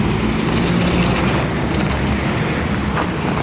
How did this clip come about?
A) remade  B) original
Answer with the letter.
B